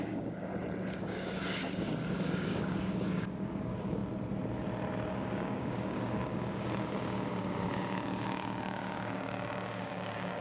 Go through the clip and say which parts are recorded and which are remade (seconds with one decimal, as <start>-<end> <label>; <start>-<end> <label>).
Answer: 0.0-0.5 remade; 0.5-1.0 recorded; 1.0-4.0 remade; 4.0-5.1 recorded; 5.1-10.4 remade